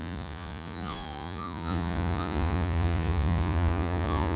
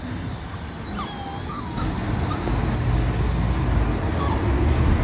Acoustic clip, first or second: second